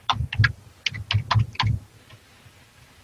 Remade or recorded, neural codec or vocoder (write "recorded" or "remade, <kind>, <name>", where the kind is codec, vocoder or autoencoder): recorded